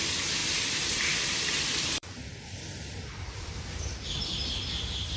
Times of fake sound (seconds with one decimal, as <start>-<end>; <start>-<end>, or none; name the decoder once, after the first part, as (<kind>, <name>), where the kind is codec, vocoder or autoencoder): 0.4-3.5 (vocoder, BigVGAN v2)